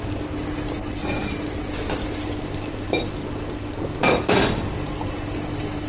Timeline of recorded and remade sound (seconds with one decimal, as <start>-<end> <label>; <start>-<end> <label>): 0.0-5.9 recorded